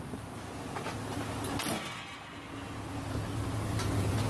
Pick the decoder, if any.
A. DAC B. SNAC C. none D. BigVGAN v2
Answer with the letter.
C